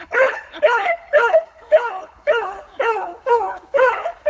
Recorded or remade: remade